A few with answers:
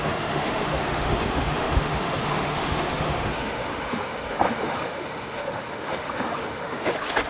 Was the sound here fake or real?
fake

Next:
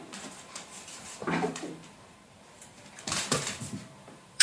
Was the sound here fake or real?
fake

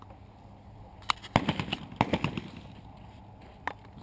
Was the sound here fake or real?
real